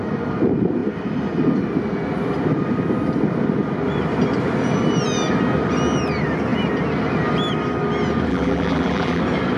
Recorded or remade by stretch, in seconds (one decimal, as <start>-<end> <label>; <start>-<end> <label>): 0.0-8.3 recorded; 8.3-9.2 remade; 9.2-9.6 recorded